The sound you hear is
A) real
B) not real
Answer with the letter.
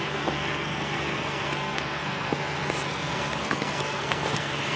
B